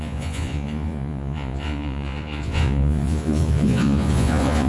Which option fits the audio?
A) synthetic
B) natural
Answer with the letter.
A